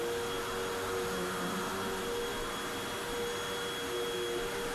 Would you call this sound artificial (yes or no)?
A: no